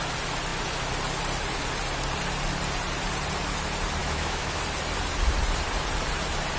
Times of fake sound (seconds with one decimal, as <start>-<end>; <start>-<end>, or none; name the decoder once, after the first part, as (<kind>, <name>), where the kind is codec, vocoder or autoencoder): 4.0-4.6 (autoencoder, DAC-VAE)